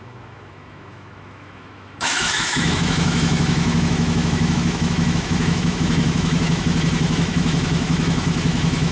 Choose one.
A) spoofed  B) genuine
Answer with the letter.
A